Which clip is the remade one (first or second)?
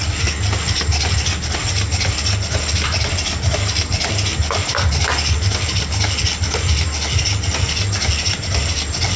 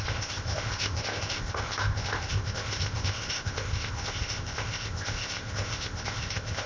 second